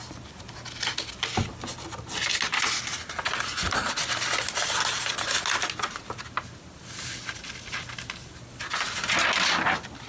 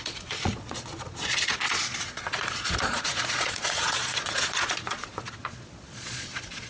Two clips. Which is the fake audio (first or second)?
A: second